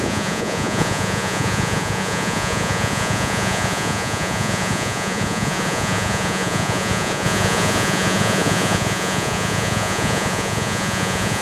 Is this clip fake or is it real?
fake